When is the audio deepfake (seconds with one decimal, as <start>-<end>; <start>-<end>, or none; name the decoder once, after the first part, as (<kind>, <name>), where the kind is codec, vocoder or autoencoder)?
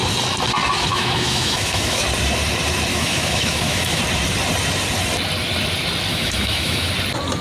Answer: 0.9-2.0 (autoencoder, DAC-VAE); 2.9-4.0; 6.1-6.9